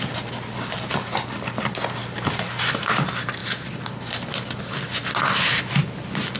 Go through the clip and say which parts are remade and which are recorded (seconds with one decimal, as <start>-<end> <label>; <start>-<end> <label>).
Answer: 0.0-2.0 recorded; 2.0-2.7 remade; 2.7-6.4 recorded